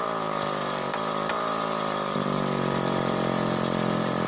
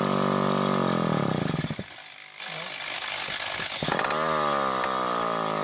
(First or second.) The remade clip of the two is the first